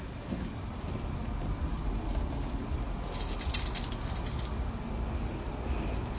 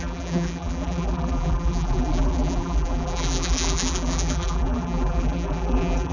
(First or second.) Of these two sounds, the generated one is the second